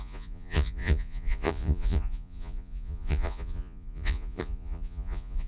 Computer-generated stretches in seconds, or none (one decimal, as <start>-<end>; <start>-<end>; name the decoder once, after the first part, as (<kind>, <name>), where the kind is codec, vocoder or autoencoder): 0.0-5.5 (vocoder, Vocos)